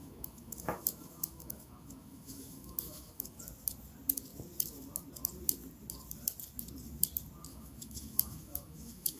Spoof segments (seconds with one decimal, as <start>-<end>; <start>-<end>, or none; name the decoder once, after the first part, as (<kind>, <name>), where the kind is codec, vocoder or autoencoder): 0.0-3.4 (autoencoder, DAC-VAE); 7.5-9.2